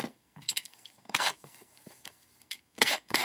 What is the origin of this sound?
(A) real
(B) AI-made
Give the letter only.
B